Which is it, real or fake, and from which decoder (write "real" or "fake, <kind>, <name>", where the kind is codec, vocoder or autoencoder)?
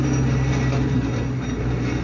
real